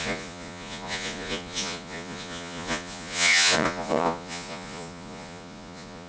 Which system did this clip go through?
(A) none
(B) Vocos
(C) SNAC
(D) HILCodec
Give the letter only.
B